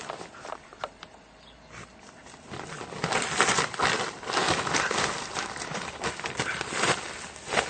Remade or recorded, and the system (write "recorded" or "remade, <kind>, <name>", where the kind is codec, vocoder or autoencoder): recorded